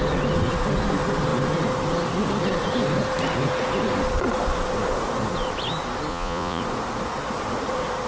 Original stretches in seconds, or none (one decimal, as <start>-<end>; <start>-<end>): 0.0-6.1; 6.6-8.1